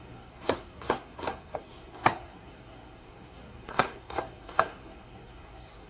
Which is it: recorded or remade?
remade